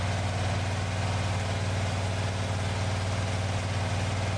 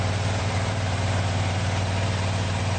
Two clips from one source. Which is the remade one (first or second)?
second